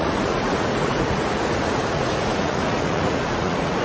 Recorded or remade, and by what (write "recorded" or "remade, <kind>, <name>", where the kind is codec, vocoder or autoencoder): remade, vocoder, Vocos